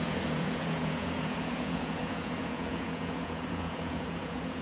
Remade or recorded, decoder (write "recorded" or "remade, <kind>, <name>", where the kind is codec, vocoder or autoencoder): remade, vocoder, Vocos